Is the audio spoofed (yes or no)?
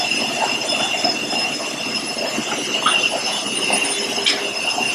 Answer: no